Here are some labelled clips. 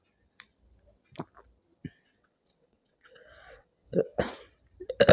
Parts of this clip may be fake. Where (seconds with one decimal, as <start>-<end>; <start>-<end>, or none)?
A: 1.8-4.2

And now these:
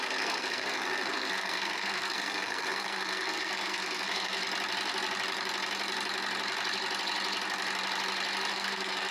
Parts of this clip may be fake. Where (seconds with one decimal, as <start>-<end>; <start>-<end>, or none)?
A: 0.0-4.4; 8.5-9.1

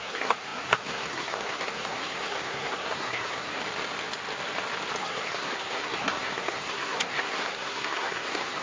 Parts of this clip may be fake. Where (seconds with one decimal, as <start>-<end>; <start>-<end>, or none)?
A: 0.0-3.6; 5.0-8.6

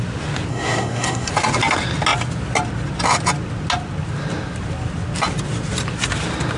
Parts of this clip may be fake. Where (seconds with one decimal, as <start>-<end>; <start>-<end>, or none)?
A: 0.5-1.3